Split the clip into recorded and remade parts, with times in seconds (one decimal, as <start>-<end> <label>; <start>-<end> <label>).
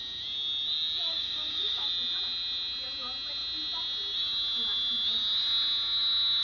0.0-1.1 recorded; 1.1-1.9 remade; 1.9-6.4 recorded